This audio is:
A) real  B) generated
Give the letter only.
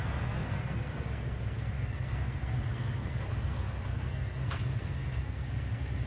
B